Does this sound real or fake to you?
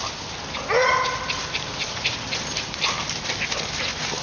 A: real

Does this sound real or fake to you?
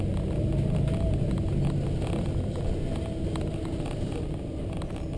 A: real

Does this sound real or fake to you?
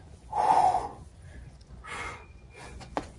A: fake